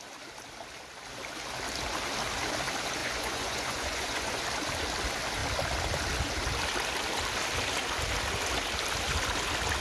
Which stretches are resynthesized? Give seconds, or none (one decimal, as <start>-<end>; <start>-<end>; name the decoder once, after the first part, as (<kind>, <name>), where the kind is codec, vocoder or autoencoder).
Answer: 3.0-4.4 (vocoder, Vocos)